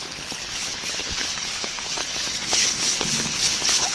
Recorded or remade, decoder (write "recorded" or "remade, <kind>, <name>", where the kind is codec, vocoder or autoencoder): remade, codec, HILCodec